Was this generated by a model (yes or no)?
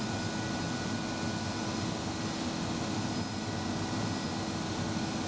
no